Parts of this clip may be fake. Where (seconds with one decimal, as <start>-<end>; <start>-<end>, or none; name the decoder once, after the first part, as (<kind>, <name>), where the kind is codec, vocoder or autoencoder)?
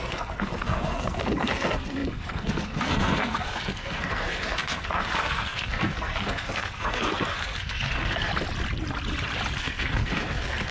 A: 0.0-8.3 (codec, SNAC); 9.6-10.7